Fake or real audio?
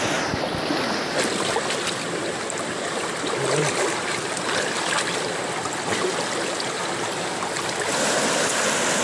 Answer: real